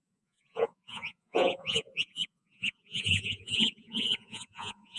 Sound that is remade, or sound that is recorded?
remade